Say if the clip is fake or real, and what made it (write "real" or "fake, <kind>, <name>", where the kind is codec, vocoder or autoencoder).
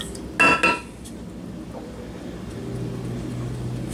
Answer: real